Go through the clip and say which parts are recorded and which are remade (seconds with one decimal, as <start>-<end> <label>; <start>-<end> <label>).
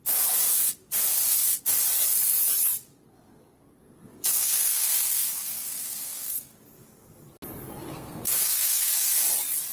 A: 0.0-4.3 recorded; 4.3-6.5 remade; 6.5-7.9 recorded; 7.9-9.1 remade; 9.1-9.7 recorded